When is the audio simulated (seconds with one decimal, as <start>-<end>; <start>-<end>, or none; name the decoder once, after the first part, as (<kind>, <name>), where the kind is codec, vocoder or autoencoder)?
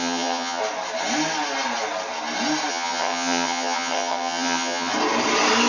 0.0-0.6 (vocoder, HiFi-GAN); 2.7-4.9